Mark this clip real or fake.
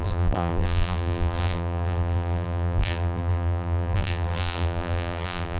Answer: fake